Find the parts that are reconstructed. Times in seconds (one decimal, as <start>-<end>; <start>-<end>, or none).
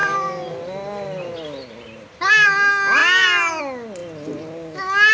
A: 0.0-2.3